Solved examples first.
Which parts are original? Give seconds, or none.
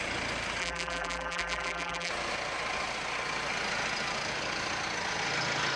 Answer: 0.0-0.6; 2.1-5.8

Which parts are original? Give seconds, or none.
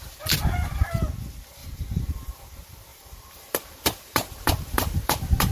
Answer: 0.0-1.6; 2.4-2.9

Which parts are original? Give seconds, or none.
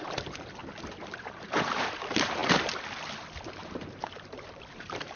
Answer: 0.6-1.2; 2.4-3.5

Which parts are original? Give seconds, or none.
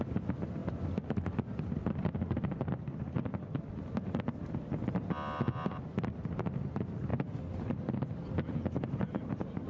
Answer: 7.1-8.6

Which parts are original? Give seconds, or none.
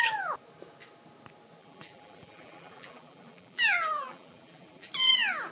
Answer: 0.0-1.6; 4.9-5.5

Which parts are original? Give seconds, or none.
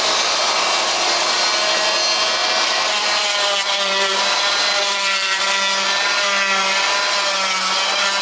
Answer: 0.0-2.4; 5.4-8.2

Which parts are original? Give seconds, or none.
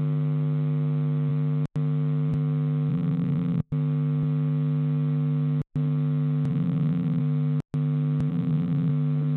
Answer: 0.0-2.9; 3.7-6.5; 7.2-8.3; 8.9-9.4